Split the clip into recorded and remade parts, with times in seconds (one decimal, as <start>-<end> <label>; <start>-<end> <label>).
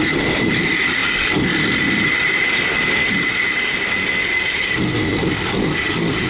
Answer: 0.0-6.3 recorded